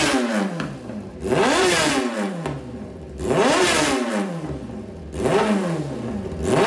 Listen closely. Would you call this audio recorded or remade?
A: recorded